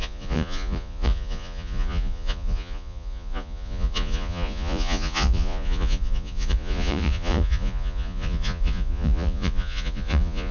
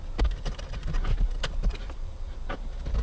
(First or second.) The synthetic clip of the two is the first